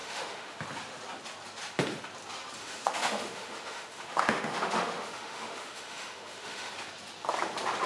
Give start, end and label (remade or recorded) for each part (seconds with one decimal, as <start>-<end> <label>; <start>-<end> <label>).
0.0-0.6 remade; 0.6-2.6 recorded; 2.6-6.7 remade; 6.7-7.9 recorded